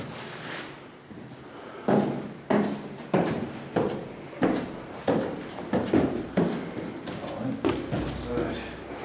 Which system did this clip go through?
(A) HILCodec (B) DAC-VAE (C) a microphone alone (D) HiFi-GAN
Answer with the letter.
C